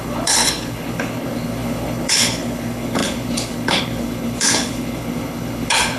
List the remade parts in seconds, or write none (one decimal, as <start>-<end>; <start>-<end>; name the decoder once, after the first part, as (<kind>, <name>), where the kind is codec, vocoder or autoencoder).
0.0-6.0 (codec, HILCodec)